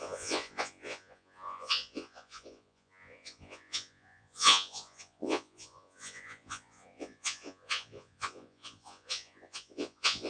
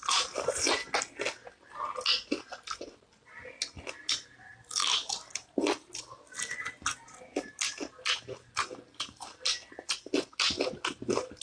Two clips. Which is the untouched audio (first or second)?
second